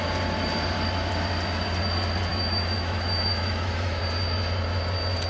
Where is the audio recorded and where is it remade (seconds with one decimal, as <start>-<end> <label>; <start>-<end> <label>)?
0.0-2.3 recorded; 2.3-4.0 remade; 4.0-5.3 recorded